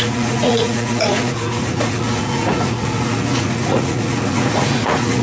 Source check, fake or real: fake